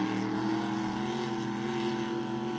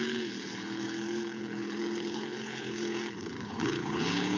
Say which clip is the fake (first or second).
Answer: second